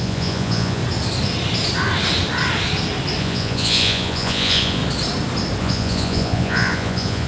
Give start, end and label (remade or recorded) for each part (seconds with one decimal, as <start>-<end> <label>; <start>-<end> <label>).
0.0-0.8 remade; 0.8-3.2 recorded; 3.2-4.8 remade; 4.8-5.6 recorded; 5.6-7.3 remade